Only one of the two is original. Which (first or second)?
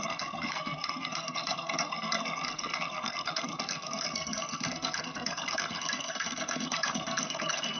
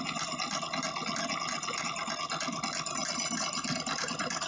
second